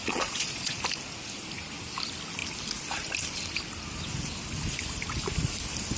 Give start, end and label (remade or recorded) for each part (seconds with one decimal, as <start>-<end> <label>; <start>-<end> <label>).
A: 0.0-0.8 remade; 0.8-6.0 recorded